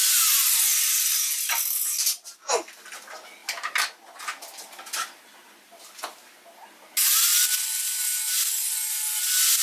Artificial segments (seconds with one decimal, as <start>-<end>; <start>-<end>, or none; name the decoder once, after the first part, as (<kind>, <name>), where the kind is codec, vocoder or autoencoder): none